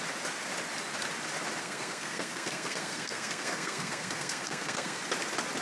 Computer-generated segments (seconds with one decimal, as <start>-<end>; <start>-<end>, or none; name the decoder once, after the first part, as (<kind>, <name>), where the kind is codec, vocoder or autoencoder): 1.6-5.0 (codec, SNAC)